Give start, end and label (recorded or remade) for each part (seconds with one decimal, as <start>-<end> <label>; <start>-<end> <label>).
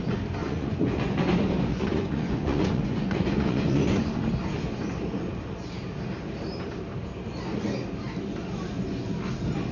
0.0-0.4 recorded; 0.4-1.2 remade; 1.2-1.7 recorded; 1.7-4.2 remade; 4.2-9.7 recorded